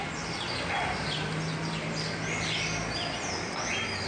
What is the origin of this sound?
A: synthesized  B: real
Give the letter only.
B